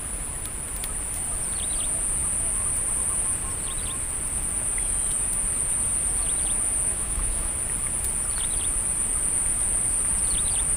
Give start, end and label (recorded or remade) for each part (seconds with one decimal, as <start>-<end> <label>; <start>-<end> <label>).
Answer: 0.0-6.9 recorded; 6.9-7.5 remade; 7.5-10.8 recorded